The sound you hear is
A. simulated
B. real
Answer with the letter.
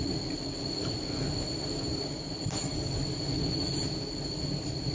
B